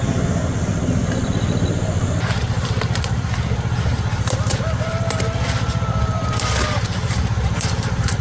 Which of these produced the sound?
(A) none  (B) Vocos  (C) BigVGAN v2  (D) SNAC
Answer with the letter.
C